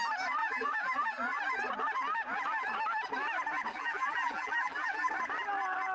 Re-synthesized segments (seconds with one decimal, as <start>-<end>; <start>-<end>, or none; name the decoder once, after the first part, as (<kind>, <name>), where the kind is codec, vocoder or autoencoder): 0.4-1.4 (vocoder, BigVGAN v2); 3.7-5.1